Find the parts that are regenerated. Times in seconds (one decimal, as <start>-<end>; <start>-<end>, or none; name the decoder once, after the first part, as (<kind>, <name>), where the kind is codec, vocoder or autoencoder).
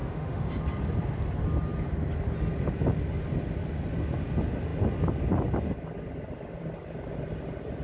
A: 0.0-0.5 (autoencoder, DAC-VAE)